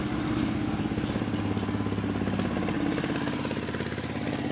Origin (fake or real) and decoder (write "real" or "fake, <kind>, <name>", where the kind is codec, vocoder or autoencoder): real